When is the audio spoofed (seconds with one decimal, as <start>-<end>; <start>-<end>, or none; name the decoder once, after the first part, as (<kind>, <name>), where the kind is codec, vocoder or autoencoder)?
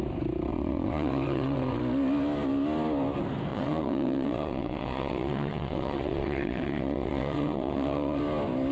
0.5-1.8 (vocoder, WaveNeXt); 3.5-8.2